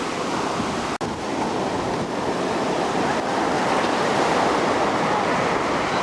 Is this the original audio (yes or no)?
yes